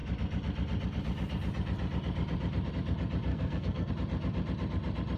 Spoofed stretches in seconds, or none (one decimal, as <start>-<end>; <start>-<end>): 3.3-3.9